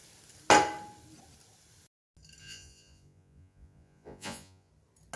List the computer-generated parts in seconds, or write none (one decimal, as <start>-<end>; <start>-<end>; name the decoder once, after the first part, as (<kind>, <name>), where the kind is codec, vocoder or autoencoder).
2.4-4.7 (vocoder, Vocos)